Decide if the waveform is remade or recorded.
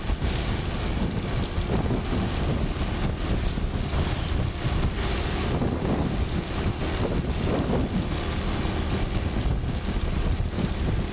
recorded